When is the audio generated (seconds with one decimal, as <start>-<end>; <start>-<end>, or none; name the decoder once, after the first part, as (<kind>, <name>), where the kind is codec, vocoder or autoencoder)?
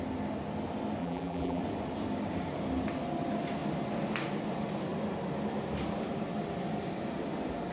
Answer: 1.0-1.6 (vocoder, BigVGAN v2)